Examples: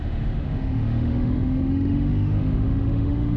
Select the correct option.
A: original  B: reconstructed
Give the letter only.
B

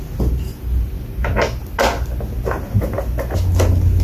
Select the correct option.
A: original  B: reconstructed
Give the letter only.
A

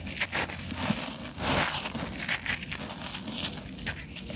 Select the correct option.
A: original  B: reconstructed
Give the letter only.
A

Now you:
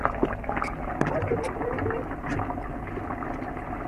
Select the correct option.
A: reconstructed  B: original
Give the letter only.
B